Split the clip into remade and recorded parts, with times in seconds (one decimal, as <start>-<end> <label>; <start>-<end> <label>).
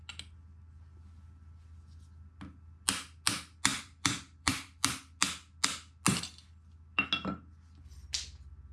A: 0.0-3.7 recorded; 3.7-4.8 remade; 4.8-8.7 recorded